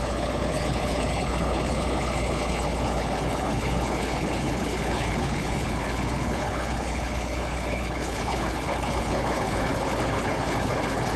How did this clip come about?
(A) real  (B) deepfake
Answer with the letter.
B